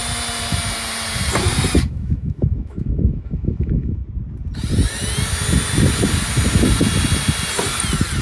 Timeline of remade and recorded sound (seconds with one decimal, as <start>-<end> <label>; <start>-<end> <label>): 0.0-1.8 recorded; 1.8-4.0 remade; 4.0-8.2 recorded